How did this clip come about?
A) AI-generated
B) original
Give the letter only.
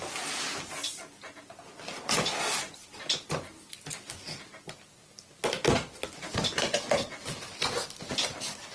B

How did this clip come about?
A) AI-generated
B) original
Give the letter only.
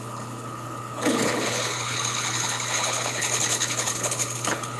A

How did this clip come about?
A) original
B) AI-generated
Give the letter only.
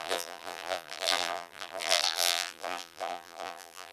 B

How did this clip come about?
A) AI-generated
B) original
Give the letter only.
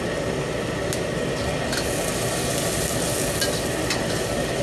B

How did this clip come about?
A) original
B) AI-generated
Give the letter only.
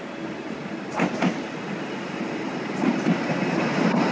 A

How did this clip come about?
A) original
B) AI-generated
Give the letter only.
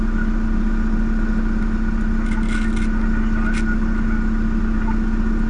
A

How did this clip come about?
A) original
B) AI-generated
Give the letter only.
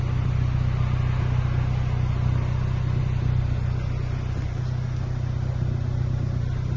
A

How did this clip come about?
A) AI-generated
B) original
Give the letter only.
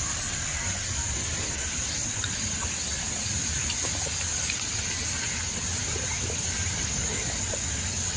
B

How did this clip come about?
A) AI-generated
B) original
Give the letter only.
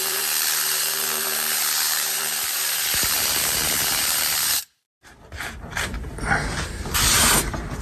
A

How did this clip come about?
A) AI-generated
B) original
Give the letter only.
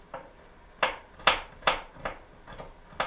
B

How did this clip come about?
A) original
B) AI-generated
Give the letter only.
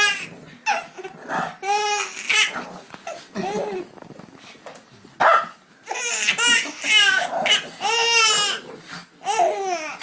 A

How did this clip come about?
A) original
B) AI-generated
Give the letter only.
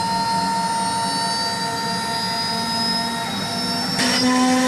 A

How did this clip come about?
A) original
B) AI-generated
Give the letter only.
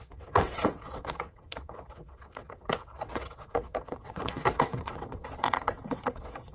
B